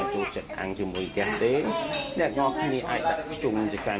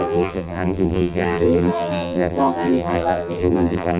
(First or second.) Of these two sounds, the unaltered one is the first